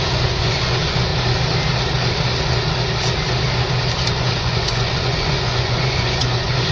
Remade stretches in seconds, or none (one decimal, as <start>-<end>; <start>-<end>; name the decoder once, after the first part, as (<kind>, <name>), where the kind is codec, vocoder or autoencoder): 0.0-1.1 (vocoder, Vocos); 4.1-6.7